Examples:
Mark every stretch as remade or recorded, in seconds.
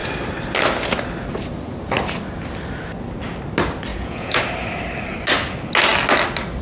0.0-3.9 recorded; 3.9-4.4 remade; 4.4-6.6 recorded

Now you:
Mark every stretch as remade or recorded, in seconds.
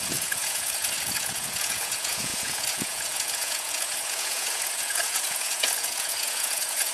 0.0-6.9 remade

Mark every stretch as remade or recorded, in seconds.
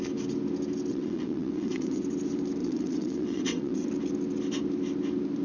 0.0-0.9 recorded; 0.9-2.0 remade; 2.0-2.6 recorded; 2.6-3.9 remade; 3.9-5.4 recorded